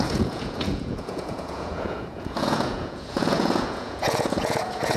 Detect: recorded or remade remade